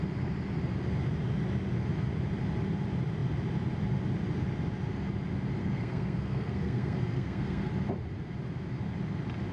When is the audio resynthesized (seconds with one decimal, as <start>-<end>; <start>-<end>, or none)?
5.6-7.7